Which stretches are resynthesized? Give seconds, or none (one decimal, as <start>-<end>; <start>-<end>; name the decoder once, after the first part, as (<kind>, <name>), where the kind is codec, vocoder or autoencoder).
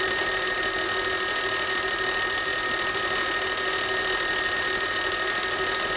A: none